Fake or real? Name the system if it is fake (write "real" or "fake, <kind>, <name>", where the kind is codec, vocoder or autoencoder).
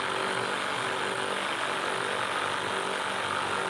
real